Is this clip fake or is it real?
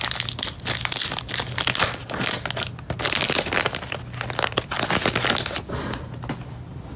real